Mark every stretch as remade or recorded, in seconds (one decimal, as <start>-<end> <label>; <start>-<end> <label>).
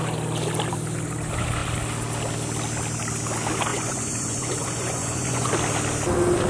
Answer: 0.0-3.7 recorded; 3.7-5.5 remade; 5.5-6.5 recorded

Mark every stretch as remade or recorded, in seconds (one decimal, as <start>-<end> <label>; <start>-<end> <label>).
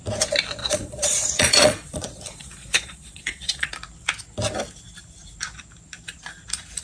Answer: 0.0-0.6 recorded; 0.6-3.7 remade; 3.7-6.8 recorded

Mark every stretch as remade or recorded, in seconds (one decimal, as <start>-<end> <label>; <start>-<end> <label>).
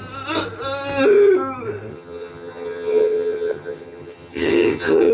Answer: 0.0-1.9 recorded; 1.9-5.1 remade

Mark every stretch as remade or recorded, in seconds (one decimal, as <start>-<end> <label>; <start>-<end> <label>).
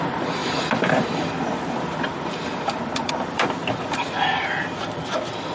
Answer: 0.0-5.5 remade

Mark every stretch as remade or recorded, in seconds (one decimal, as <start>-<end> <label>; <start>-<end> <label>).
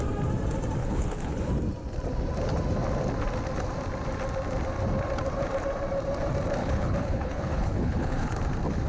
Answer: 0.0-0.8 recorded; 0.8-1.5 remade; 1.5-6.6 recorded; 6.6-8.4 remade; 8.4-8.9 recorded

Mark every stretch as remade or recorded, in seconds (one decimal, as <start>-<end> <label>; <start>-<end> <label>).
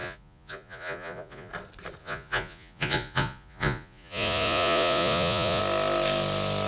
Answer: 0.0-1.5 remade; 1.5-2.0 recorded; 2.0-5.6 remade; 5.6-6.7 recorded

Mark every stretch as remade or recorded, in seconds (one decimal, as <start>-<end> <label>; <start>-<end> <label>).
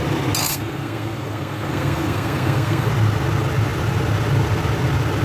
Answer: 0.0-0.4 recorded; 0.4-2.9 remade; 2.9-5.2 recorded